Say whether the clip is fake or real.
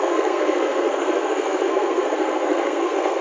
fake